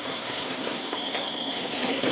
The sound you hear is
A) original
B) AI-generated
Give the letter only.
B